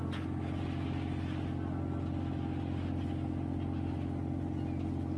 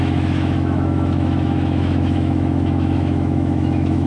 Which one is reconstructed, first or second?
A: second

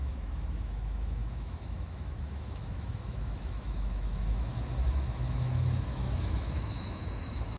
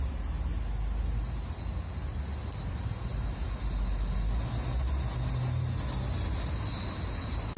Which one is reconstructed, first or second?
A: first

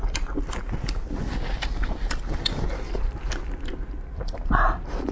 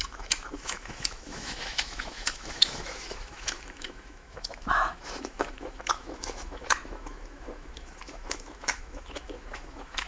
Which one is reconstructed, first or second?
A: second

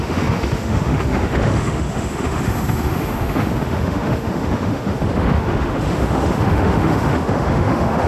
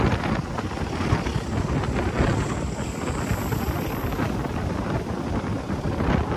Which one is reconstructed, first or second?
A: first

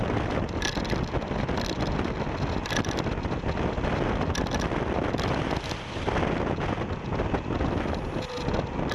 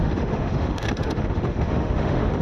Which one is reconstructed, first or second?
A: second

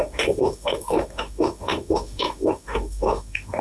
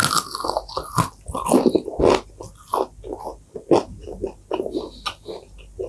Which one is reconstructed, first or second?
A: first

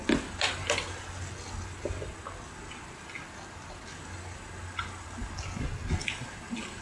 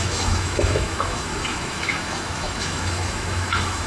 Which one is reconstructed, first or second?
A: second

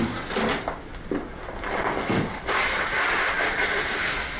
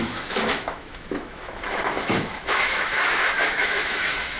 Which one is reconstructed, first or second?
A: second